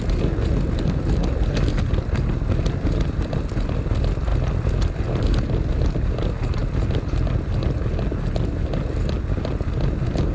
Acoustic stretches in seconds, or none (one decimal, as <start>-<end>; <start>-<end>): 0.0-10.3